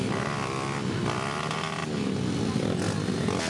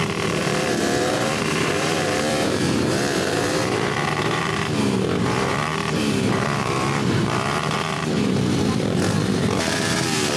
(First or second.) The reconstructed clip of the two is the second